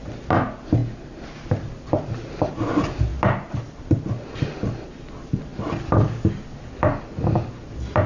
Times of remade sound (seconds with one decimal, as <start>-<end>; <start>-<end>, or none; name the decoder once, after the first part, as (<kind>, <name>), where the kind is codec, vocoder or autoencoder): none